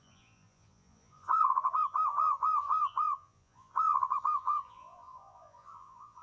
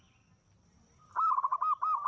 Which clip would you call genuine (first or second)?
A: second